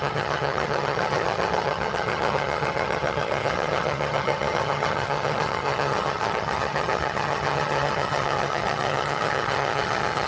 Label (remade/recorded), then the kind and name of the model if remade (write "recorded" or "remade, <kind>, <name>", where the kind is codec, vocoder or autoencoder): remade, vocoder, HiFi-GAN